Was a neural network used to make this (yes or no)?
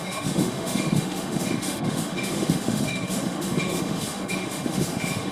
yes